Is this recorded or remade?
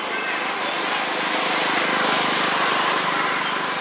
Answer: recorded